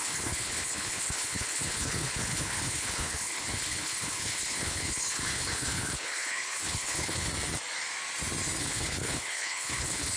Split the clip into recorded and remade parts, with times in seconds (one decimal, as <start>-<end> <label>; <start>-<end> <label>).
0.0-7.3 remade; 7.3-8.6 recorded; 8.6-10.2 remade